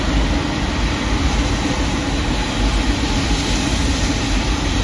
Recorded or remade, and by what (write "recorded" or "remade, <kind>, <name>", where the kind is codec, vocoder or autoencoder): recorded